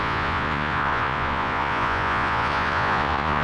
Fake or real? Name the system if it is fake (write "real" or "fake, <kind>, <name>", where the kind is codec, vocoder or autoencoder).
fake, vocoder, Vocos